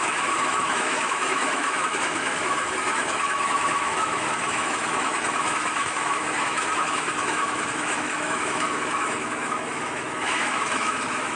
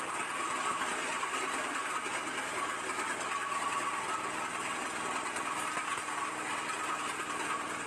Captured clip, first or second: second